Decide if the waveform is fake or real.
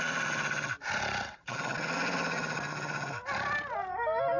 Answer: real